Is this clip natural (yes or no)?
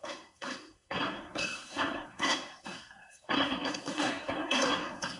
no